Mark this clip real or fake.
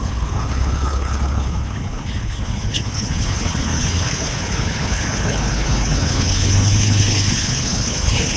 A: fake